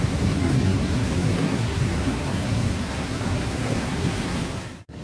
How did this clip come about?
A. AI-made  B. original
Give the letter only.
A